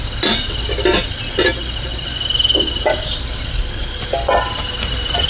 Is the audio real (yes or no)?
yes